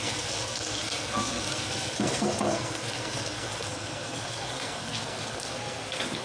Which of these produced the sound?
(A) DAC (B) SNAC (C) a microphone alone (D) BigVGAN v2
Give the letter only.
B